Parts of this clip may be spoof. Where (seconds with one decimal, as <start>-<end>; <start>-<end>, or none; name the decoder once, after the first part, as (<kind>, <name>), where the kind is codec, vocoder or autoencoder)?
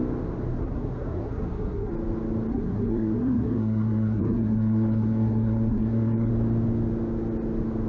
0.5-1.9 (codec, SNAC); 2.5-6.3